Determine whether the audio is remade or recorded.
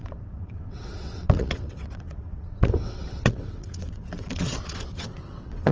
remade